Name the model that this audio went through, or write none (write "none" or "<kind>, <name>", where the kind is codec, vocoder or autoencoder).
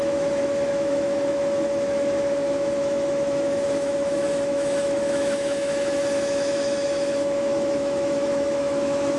autoencoder, DAC-VAE